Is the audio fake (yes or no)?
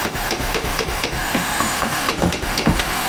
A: yes